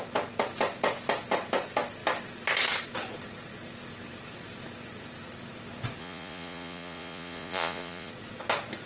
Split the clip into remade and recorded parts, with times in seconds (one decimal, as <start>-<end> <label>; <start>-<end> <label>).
0.0-6.0 recorded; 6.0-8.1 remade; 8.1-8.9 recorded